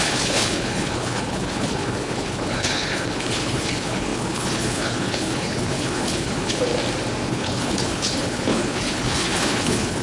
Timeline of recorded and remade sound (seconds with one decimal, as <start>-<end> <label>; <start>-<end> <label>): 0.0-6.7 remade; 6.7-7.3 recorded; 7.3-10.0 remade